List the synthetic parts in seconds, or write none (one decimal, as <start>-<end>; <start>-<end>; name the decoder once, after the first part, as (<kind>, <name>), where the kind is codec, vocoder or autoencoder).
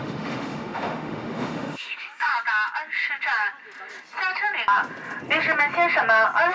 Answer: 0.0-2.3 (autoencoder, DAC-VAE)